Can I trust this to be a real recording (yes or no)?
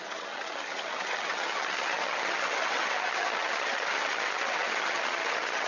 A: no